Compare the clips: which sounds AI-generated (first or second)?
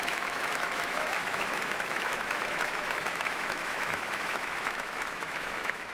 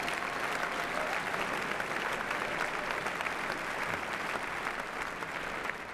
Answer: first